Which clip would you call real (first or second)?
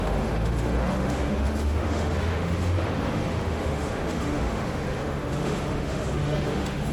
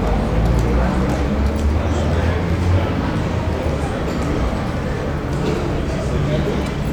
second